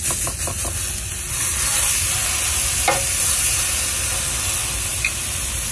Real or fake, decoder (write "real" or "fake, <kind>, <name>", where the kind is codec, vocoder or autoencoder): real